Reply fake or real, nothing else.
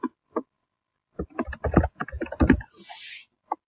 real